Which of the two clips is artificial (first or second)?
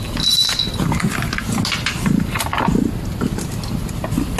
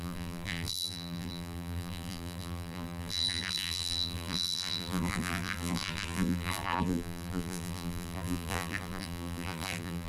second